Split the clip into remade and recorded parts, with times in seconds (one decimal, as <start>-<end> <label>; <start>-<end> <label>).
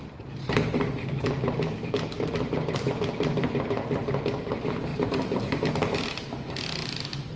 0.0-4.2 remade; 4.2-4.9 recorded; 4.9-5.7 remade; 5.7-6.8 recorded; 6.8-7.4 remade